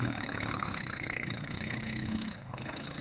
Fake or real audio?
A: fake